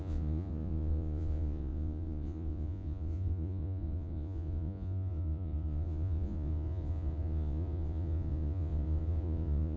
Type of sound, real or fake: fake